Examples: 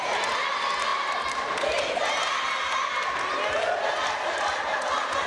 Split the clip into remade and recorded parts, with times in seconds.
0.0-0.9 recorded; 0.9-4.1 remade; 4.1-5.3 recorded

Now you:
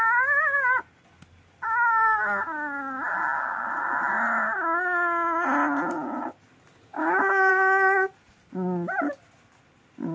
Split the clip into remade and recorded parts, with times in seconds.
0.0-6.9 recorded; 6.9-7.5 remade; 7.5-10.1 recorded

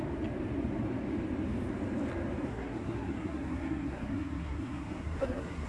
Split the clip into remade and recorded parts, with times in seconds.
0.0-2.5 recorded; 2.5-5.7 remade

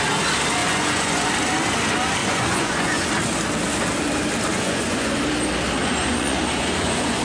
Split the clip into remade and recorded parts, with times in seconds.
0.0-0.6 recorded; 0.6-1.3 remade; 1.3-2.2 recorded; 2.2-3.1 remade; 3.1-4.5 recorded; 4.5-5.2 remade; 5.2-5.8 recorded; 5.8-7.2 remade

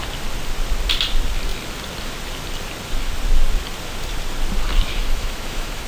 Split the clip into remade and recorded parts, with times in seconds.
0.0-4.9 recorded; 4.9-5.9 remade

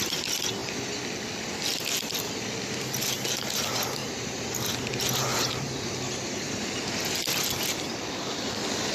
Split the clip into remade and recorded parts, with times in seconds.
0.0-4.0 recorded; 4.0-4.7 remade; 4.7-5.3 recorded; 5.3-6.7 remade; 6.7-8.9 recorded